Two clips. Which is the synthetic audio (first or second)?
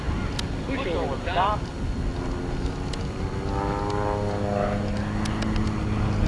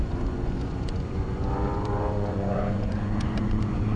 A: second